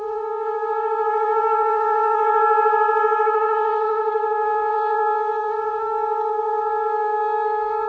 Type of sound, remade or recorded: remade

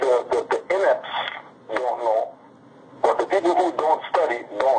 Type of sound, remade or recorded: recorded